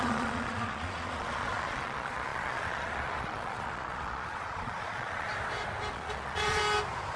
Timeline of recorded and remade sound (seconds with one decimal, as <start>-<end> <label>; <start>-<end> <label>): 0.0-5.3 remade; 5.3-5.9 recorded; 5.9-6.6 remade; 6.6-7.2 recorded